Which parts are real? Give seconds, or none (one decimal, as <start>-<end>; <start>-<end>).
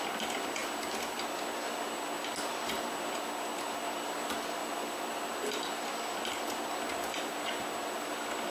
0.0-8.5